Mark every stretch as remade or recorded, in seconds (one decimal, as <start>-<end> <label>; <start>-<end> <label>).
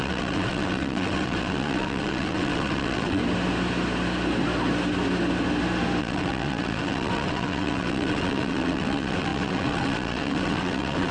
0.0-3.2 remade; 3.2-6.0 recorded; 6.0-11.1 remade